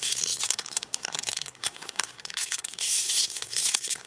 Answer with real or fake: fake